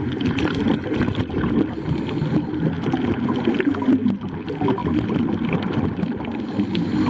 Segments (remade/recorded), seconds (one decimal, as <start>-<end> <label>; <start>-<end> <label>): 0.0-7.1 recorded